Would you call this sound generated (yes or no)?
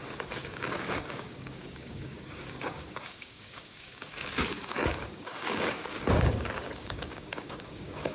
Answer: yes